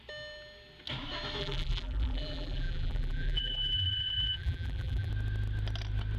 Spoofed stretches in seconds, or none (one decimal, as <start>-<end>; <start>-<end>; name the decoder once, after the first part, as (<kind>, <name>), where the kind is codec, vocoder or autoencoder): 1.4-5.1 (vocoder, BigVGAN v2)

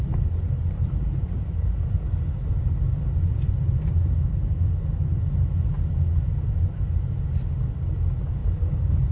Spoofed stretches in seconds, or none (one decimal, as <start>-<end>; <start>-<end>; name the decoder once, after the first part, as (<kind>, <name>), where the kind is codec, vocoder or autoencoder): none

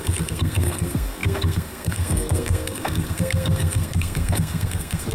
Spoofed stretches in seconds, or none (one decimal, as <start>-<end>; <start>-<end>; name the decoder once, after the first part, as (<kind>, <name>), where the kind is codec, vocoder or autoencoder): 0.0-5.1 (codec, SNAC)

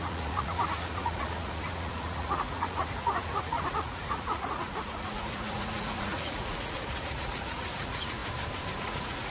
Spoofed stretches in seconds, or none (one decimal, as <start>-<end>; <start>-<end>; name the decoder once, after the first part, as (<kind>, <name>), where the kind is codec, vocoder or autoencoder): 0.0-8.2 (vocoder, Vocos); 8.8-9.3

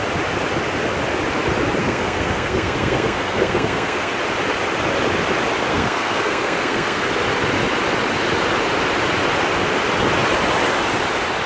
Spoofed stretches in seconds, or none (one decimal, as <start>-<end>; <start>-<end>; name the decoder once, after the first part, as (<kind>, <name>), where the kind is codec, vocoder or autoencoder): 1.8-4.1 (codec, SNAC); 5.7-7.1

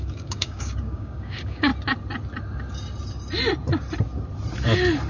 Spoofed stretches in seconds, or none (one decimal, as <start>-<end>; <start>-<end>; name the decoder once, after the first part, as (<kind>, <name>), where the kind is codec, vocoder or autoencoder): 0.0-1.7 (codec, DAC)

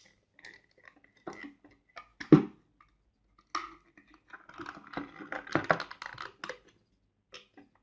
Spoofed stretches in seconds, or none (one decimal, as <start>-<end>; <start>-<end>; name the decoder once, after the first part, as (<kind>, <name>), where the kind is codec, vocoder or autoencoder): none